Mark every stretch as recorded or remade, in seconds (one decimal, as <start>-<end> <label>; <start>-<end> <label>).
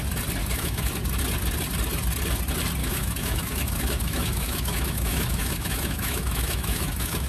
0.0-0.4 recorded; 0.4-0.9 remade; 0.9-2.8 recorded; 2.8-7.3 remade